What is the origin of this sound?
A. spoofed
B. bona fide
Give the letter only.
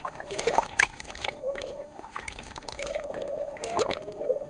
A